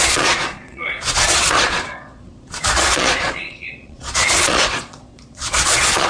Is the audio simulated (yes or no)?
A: yes